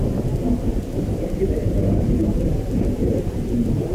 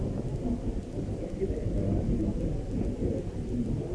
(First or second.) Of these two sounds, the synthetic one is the first